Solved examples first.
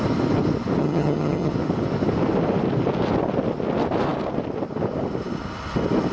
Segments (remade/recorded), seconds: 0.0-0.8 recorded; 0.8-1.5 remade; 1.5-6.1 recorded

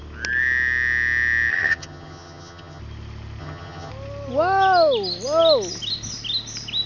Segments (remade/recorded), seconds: 0.0-1.5 recorded; 1.5-2.8 remade; 2.8-3.4 recorded; 3.4-3.9 remade; 3.9-6.9 recorded

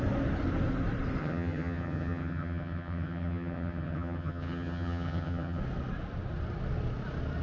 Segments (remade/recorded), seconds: 0.0-1.2 recorded; 1.2-5.6 remade; 5.6-7.4 recorded

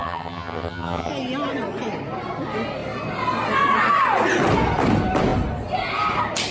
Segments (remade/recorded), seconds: 0.0-1.1 remade; 1.1-6.5 recorded

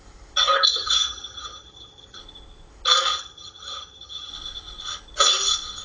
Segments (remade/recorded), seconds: 0.0-0.7 recorded; 0.7-2.2 remade; 2.2-3.1 recorded; 3.1-4.3 remade; 4.3-5.8 recorded